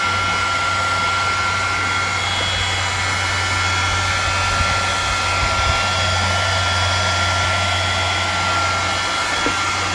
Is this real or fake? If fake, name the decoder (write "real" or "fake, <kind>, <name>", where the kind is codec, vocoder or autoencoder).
real